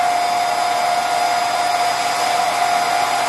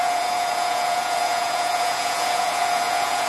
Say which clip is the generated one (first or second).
second